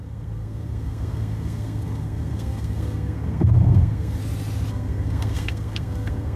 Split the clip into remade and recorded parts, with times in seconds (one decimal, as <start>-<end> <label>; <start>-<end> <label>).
0.0-4.2 remade; 4.2-4.7 recorded; 4.7-6.4 remade